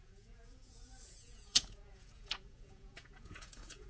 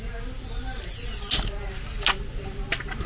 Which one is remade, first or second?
first